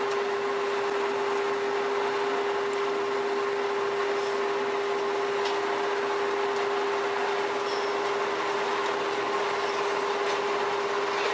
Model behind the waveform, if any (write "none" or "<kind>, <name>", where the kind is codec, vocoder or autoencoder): none